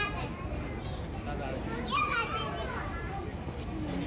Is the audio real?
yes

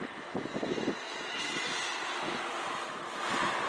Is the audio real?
yes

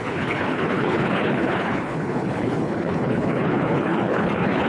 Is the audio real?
no